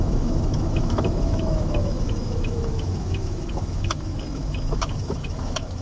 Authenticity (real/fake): fake